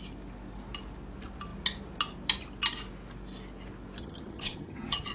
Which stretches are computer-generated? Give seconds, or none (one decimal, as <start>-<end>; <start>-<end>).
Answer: 4.0-5.1